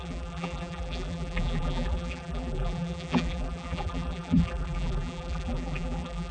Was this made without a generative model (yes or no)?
no